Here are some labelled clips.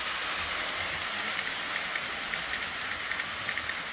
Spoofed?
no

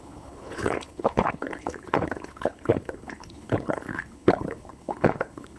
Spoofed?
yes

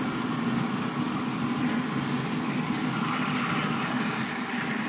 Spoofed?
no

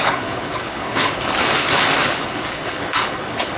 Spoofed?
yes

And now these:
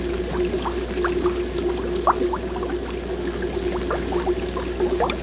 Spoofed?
no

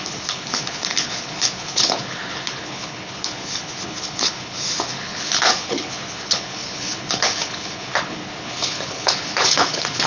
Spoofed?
yes